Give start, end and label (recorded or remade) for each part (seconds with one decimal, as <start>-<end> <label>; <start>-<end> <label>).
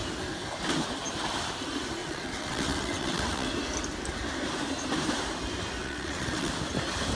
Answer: 0.0-2.0 recorded; 2.0-3.5 remade; 3.5-5.8 recorded; 5.8-6.5 remade; 6.5-7.2 recorded